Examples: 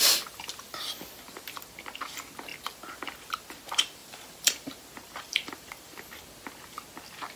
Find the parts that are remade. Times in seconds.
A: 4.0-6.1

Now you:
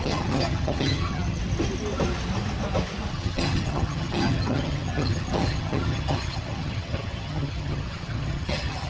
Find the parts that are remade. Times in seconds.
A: 0.0-1.4; 3.1-8.9

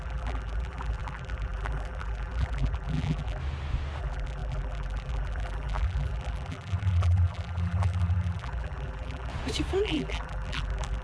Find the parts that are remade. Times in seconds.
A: 0.0-3.4; 4.0-9.3; 9.8-11.0

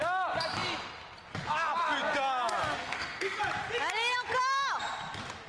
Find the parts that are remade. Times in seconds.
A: 2.8-3.4

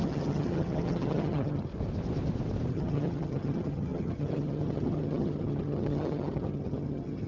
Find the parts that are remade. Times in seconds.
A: 0.0-1.7; 2.7-7.3

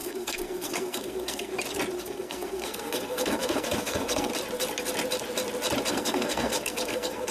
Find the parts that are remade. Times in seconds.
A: 0.0-1.5; 2.0-4.3; 5.9-7.3

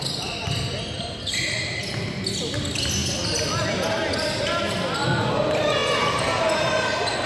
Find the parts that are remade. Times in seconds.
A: none